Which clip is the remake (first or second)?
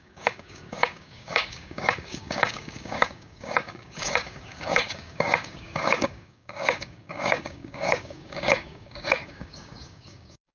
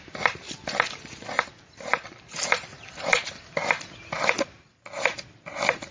first